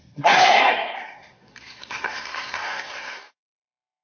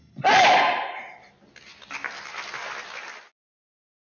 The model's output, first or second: first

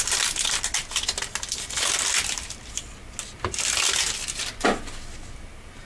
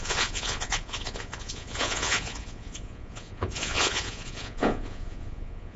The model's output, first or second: second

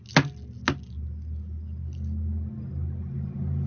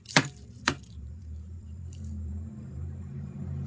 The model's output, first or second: second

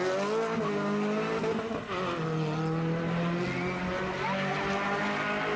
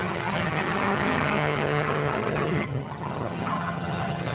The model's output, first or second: second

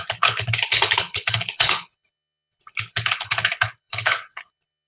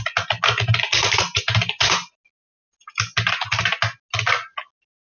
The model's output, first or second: first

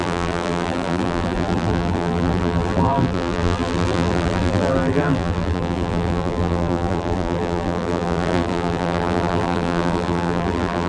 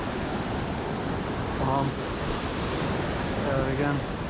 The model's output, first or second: first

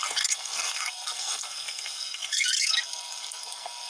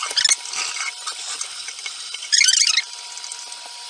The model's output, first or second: first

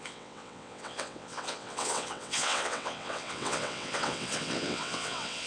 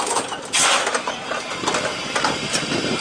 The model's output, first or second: first